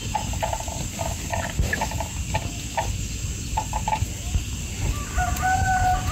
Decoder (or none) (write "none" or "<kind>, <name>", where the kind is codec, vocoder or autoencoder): none